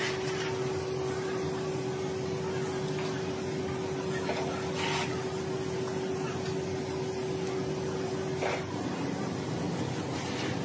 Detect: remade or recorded recorded